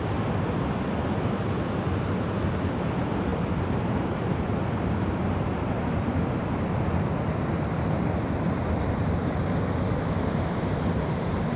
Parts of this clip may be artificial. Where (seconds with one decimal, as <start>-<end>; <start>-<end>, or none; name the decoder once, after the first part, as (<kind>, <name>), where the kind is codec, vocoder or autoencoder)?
none